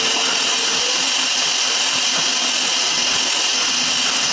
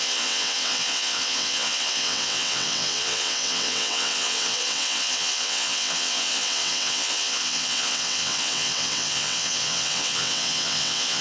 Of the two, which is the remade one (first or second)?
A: second